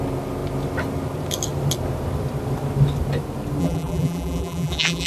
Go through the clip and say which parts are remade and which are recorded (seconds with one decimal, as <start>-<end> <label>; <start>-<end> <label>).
0.0-3.6 recorded; 3.6-5.1 remade